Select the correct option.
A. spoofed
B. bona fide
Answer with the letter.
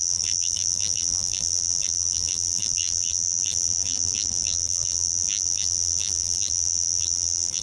A